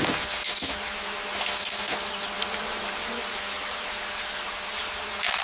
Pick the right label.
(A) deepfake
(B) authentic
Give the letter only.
B